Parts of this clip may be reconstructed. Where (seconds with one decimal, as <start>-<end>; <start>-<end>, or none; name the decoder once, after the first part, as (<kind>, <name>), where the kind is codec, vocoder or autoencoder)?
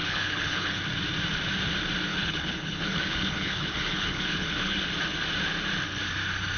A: 0.0-0.8 (codec, HILCodec); 2.1-4.8